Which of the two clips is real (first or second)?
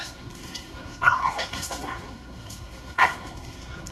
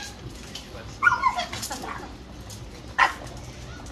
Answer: second